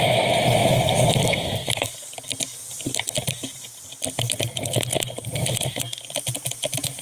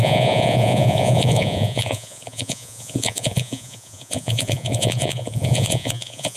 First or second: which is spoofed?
second